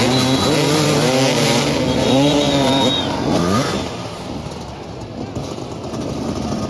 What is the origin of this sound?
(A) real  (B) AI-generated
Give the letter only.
B